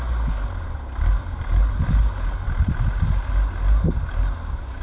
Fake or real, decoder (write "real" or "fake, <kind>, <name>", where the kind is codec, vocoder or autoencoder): real